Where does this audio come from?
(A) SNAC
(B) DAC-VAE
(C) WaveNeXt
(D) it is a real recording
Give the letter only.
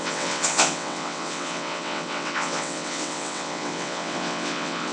C